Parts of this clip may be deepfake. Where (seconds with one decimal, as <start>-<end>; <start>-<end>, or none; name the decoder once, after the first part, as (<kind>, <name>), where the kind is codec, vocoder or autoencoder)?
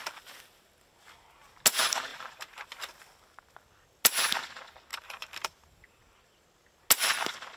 2.1-2.9 (vocoder, BigVGAN v2); 4.9-6.0